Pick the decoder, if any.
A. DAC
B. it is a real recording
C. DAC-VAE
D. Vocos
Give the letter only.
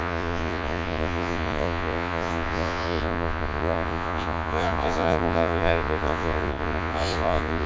D